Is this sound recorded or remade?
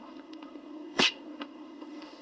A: remade